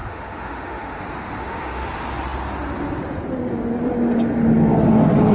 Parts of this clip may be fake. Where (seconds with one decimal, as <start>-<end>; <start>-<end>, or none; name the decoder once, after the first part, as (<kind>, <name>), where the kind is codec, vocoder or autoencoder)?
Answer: 0.0-1.0 (autoencoder, DAC-VAE); 1.4-1.9

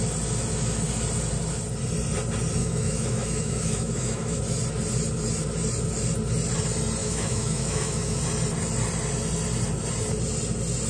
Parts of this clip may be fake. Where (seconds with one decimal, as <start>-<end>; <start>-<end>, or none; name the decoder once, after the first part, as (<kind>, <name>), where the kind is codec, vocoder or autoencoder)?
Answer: 2.6-4.4 (autoencoder, DAC-VAE); 7.0-8.2

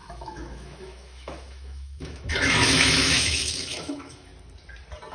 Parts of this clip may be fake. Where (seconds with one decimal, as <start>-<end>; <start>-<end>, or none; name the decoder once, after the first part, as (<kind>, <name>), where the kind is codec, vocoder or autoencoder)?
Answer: 0.0-4.3 (autoencoder, DAC-VAE)

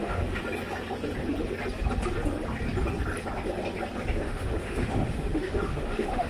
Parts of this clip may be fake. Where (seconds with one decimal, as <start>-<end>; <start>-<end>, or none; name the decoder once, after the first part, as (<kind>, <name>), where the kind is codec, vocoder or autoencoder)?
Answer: 0.0-0.4 (autoencoder, DAC-VAE); 4.2-6.3

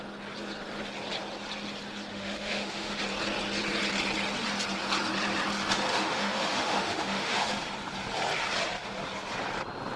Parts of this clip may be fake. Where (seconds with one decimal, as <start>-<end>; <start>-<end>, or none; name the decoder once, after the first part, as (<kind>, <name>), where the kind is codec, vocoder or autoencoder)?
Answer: 2.1-3.0 (autoencoder, DAC-VAE); 5.9-7.5